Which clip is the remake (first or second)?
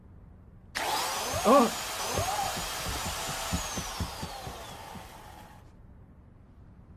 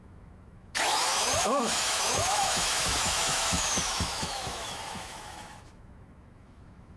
second